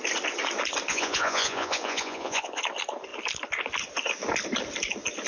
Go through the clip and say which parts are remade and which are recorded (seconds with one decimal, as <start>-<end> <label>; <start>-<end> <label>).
0.0-0.9 recorded; 0.9-2.6 remade; 2.6-5.3 recorded